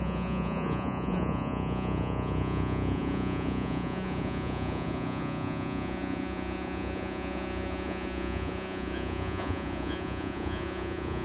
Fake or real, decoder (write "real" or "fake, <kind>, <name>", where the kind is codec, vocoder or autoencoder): fake, vocoder, Vocos